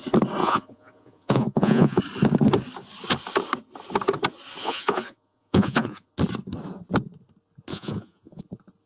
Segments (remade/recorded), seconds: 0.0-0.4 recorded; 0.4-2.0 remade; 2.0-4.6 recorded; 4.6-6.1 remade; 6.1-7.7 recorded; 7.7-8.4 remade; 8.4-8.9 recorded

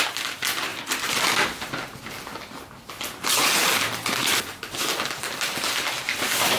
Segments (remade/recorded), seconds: 0.0-6.6 recorded

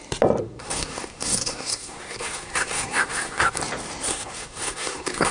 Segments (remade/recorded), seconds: 0.0-0.4 recorded; 0.4-3.6 remade; 3.6-4.1 recorded; 4.1-5.3 remade

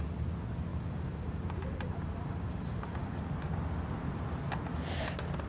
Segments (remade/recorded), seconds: 0.0-0.7 recorded; 0.7-3.1 remade; 3.1-5.5 recorded

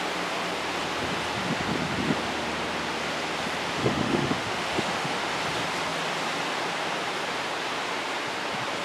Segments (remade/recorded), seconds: 0.0-3.8 recorded; 3.8-5.3 remade; 5.3-8.8 recorded

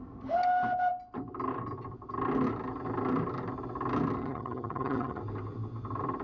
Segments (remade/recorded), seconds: 0.0-4.2 recorded; 4.2-5.2 remade; 5.2-6.2 recorded

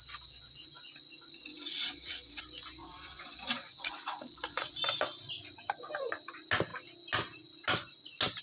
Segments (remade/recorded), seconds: 0.0-1.5 recorded; 1.5-2.4 remade; 2.4-2.8 recorded; 2.8-4.8 remade; 4.8-8.4 recorded